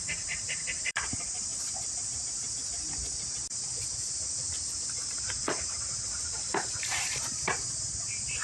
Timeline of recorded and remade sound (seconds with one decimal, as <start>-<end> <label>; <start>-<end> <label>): 0.0-1.5 remade; 1.5-4.8 recorded; 4.8-8.4 remade